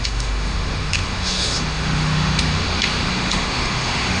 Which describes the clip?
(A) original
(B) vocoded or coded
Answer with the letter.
B